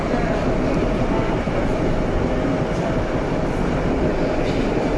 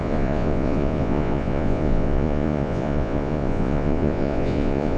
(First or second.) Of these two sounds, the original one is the first